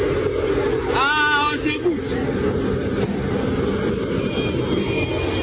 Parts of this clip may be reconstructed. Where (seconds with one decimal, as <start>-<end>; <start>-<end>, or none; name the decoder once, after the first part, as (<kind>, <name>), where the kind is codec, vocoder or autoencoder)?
2.2-4.2 (vocoder, BigVGAN v2)